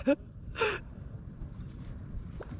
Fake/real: fake